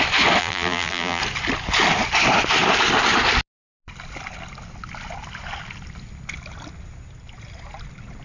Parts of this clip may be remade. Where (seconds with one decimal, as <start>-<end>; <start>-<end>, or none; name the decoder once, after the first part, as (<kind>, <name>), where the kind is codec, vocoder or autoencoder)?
0.4-1.2 (vocoder, BigVGAN v2)